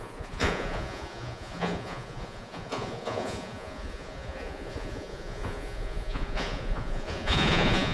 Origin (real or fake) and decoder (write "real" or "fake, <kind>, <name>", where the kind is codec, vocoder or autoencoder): fake, vocoder, Vocos